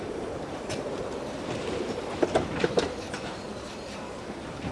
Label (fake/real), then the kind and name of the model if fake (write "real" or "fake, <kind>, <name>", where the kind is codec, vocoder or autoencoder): fake, vocoder, BigVGAN v2